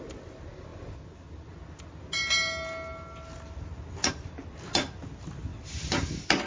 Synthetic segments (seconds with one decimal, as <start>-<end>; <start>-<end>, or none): none